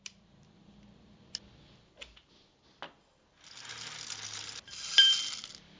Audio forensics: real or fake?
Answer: real